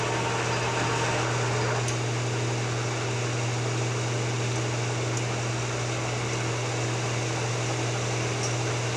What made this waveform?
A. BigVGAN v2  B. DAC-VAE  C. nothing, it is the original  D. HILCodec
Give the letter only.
C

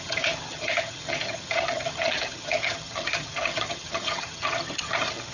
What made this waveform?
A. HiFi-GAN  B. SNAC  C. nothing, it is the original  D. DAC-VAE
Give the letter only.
A